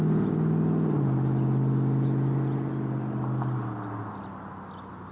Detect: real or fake real